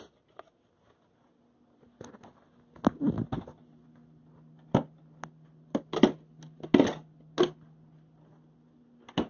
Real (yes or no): yes